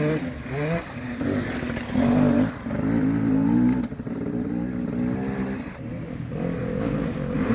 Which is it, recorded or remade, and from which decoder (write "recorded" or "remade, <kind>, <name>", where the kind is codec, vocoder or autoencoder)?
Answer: recorded